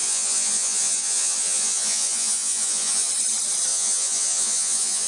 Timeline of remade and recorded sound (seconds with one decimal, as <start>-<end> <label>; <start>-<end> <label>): 0.0-3.1 remade; 3.1-3.7 recorded; 3.7-5.1 remade